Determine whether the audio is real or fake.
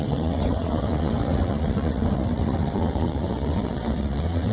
fake